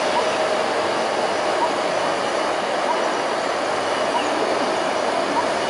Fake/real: real